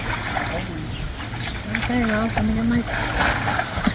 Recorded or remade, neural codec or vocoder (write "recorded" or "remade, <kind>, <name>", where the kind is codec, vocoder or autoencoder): recorded